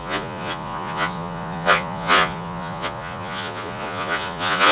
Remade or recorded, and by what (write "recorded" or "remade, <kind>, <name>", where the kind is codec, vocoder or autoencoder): remade, vocoder, Vocos